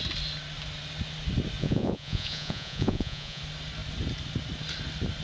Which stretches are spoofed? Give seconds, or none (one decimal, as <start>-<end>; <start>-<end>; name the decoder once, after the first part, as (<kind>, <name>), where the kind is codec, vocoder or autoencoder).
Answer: 1.6-3.4 (vocoder, Vocos)